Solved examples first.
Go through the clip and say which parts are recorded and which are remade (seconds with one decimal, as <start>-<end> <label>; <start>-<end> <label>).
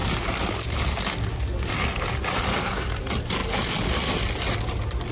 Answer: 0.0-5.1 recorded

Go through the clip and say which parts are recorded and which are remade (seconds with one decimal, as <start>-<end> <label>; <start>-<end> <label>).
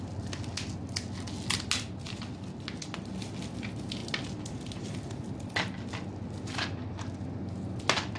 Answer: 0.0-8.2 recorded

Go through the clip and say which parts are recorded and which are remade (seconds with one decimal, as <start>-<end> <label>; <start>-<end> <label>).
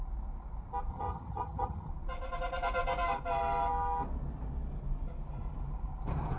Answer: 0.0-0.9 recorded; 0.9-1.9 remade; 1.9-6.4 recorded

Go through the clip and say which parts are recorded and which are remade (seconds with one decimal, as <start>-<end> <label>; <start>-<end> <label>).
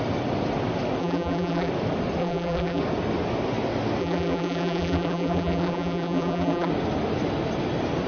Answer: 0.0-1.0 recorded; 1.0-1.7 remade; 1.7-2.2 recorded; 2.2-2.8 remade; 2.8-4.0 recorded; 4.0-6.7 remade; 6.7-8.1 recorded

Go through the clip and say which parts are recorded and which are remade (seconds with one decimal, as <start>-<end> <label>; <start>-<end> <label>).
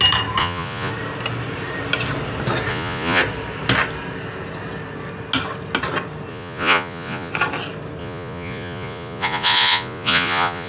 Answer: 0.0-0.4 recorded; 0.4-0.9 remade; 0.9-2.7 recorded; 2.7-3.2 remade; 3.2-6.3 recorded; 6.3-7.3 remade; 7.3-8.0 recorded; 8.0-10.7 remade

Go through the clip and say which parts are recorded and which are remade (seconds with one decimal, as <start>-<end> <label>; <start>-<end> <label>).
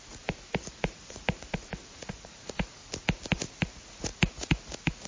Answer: 0.0-2.8 remade; 2.8-3.3 recorded; 3.3-5.1 remade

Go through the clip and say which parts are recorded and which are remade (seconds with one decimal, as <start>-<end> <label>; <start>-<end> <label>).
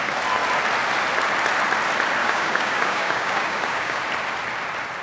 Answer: 0.0-2.2 recorded; 2.2-4.0 remade; 4.0-5.0 recorded